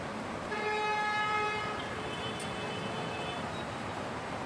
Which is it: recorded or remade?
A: remade